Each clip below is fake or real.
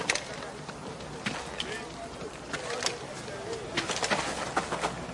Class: real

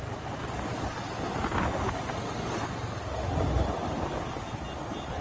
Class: real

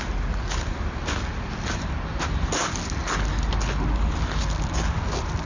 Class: real